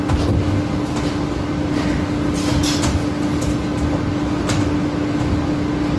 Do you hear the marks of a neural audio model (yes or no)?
no